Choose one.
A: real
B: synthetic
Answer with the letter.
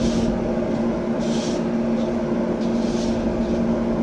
A